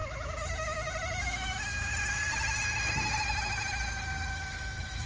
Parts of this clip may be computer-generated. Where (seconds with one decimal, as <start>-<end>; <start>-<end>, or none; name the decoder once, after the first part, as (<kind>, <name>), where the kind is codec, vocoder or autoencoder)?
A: 0.0-1.9 (autoencoder, DAC-VAE); 4.3-5.1

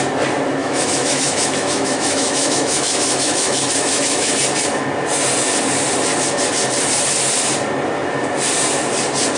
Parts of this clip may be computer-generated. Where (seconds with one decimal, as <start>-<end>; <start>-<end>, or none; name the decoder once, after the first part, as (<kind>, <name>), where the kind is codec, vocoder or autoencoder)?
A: 0.6-4.3 (autoencoder, DAC-VAE)

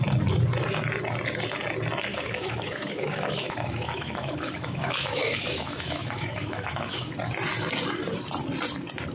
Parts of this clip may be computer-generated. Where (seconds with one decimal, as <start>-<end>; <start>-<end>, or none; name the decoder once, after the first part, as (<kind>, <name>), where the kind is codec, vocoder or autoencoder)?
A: 2.1-7.1 (autoencoder, DAC-VAE)

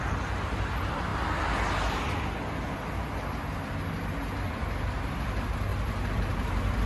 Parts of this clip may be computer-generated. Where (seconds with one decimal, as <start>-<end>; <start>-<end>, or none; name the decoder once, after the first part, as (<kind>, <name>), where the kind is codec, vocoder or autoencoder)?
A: none

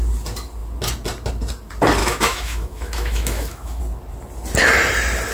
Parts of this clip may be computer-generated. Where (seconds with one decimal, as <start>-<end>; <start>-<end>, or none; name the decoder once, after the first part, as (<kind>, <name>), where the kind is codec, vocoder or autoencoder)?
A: 2.0-3.8 (autoencoder, DAC-VAE)

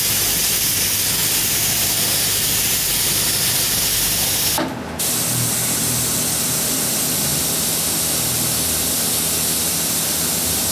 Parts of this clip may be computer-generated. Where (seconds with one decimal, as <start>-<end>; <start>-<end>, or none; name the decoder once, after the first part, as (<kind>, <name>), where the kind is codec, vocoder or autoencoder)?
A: none

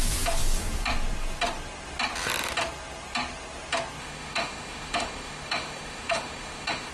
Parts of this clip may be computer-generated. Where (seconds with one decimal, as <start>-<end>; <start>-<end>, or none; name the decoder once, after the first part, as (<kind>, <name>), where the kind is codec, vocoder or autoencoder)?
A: 4.0-6.9 (autoencoder, DAC-VAE)